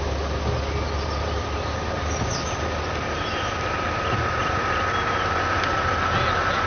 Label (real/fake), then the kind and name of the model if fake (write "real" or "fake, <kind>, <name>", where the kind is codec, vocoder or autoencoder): real